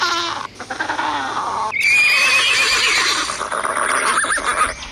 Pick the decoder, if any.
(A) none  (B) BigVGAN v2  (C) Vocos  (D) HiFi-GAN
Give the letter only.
A